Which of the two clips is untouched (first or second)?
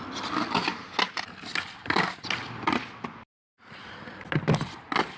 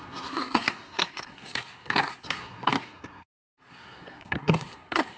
first